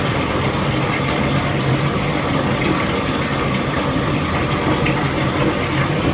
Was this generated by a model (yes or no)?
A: yes